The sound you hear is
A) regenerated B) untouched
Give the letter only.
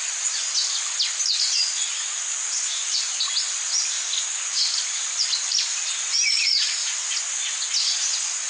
B